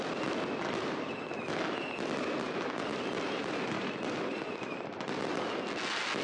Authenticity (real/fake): real